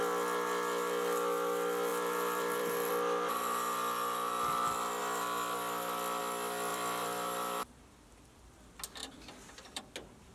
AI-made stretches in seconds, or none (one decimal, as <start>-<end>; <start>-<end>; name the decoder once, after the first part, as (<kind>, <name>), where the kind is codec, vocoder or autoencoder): 1.9-2.9 (vocoder, BigVGAN v2); 6.7-8.4; 9.0-9.8